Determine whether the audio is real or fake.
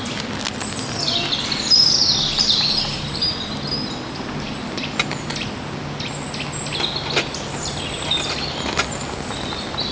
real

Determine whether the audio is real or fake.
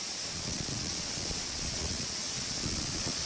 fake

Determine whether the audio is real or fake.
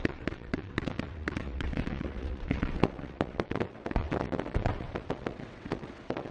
fake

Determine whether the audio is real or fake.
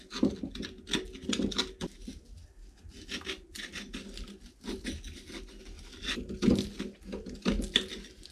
real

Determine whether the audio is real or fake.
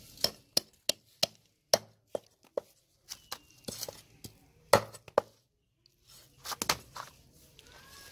real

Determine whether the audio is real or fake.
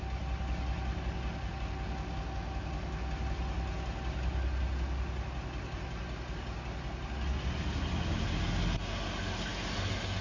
real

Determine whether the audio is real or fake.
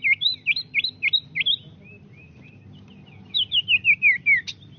real